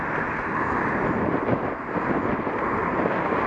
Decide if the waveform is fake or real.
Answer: real